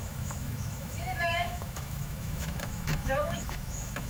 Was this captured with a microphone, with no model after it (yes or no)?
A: no